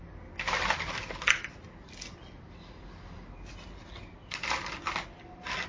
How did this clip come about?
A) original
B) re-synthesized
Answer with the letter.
A